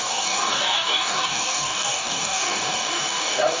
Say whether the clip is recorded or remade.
remade